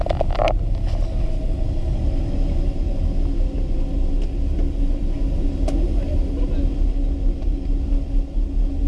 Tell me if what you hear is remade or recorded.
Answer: recorded